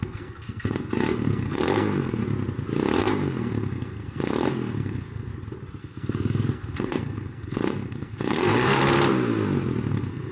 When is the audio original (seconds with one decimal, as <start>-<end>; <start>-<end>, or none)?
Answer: 2.2-3.0; 5.3-5.8; 8.8-9.9